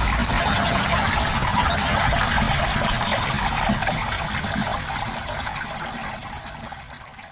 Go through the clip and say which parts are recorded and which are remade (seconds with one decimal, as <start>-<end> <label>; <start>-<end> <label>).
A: 0.0-0.4 recorded; 0.4-1.1 remade; 1.1-1.5 recorded; 1.5-2.1 remade; 2.1-7.3 recorded